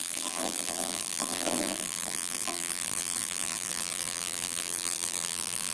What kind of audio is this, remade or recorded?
remade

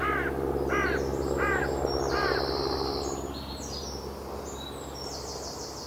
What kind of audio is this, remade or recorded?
recorded